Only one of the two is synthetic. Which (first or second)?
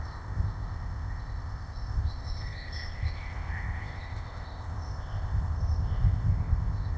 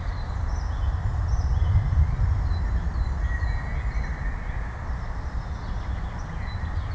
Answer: first